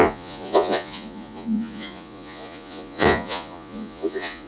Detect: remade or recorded remade